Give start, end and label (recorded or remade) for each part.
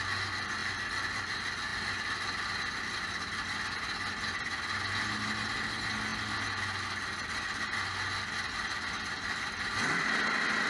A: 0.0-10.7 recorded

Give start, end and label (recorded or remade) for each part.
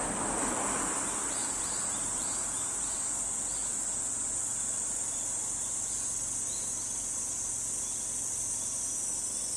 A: 0.0-9.6 recorded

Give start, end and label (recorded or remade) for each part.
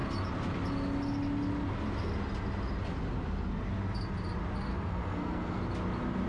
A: 0.0-4.7 recorded; 4.7-5.6 remade; 5.6-6.3 recorded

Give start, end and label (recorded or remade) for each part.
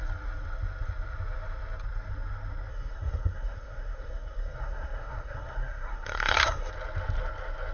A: 0.0-2.7 recorded; 2.7-6.7 remade; 6.7-7.7 recorded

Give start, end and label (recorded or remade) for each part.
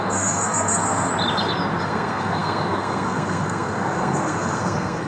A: 0.0-1.1 remade; 1.1-1.8 recorded; 1.8-5.1 remade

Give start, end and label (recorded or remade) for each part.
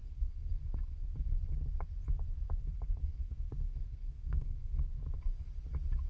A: 0.0-0.6 remade; 0.6-3.0 recorded; 3.0-4.9 remade; 4.9-6.1 recorded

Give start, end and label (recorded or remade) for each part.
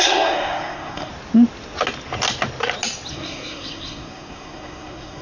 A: 0.0-1.1 remade; 1.1-3.1 recorded; 3.1-5.2 remade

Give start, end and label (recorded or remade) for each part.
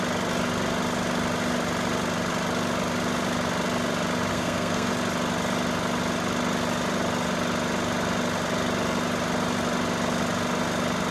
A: 0.0-4.3 recorded; 4.3-4.9 remade; 4.9-11.1 recorded